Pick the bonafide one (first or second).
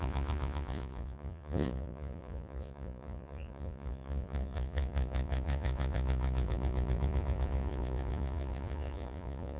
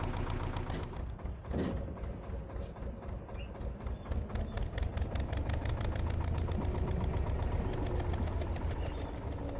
second